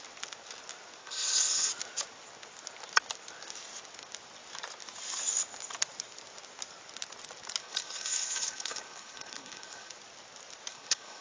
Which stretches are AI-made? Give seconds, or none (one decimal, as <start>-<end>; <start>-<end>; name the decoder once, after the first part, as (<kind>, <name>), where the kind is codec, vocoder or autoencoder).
1.0-1.7 (codec, HILCodec); 7.6-9.9; 10.7-11.2